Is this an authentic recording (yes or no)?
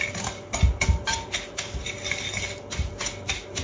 yes